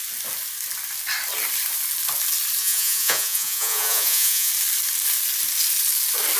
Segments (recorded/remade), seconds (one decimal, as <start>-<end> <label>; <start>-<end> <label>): 0.0-2.6 recorded; 2.6-4.5 remade; 4.5-6.4 recorded